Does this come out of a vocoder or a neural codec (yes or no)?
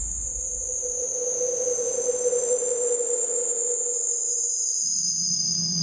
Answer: no